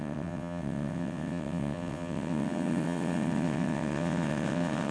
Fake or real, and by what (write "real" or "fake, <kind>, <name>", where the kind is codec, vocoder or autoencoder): fake, vocoder, WaveNeXt